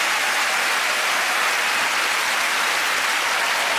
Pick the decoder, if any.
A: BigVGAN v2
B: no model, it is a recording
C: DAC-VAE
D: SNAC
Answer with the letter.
B